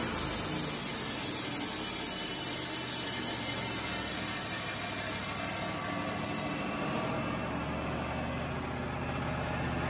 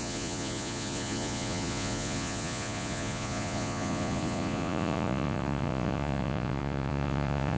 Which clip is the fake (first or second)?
second